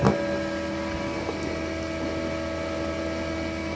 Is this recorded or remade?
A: recorded